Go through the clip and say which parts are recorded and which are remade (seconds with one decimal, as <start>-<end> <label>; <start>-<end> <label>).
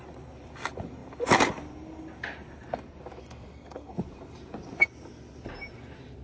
0.0-3.2 recorded; 3.2-4.0 remade; 4.0-6.2 recorded